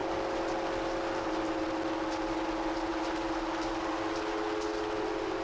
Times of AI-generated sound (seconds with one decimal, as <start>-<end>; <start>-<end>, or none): none